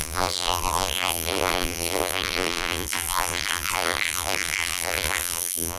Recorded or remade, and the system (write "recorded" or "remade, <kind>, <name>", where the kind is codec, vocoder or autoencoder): remade, vocoder, BigVGAN v2